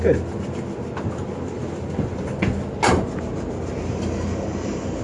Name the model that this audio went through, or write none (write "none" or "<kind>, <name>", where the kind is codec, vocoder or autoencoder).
none